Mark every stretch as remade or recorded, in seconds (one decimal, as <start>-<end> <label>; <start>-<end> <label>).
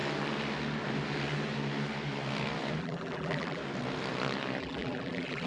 0.0-2.8 recorded; 2.8-3.6 remade; 3.6-4.6 recorded; 4.6-5.5 remade